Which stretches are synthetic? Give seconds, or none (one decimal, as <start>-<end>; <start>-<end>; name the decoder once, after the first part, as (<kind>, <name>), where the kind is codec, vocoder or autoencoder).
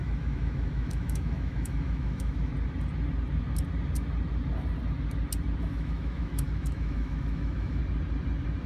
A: 0.0-2.5 (autoencoder, DAC-VAE); 5.6-7.8